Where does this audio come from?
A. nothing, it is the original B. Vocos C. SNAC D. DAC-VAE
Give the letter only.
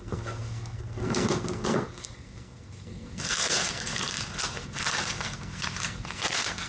C